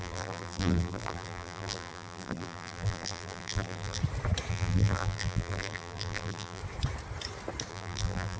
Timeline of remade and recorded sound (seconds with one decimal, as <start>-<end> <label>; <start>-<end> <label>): 0.0-4.0 remade; 4.0-4.5 recorded; 4.5-6.6 remade; 6.6-7.7 recorded; 7.7-8.4 remade